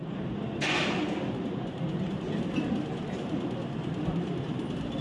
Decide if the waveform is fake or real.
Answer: real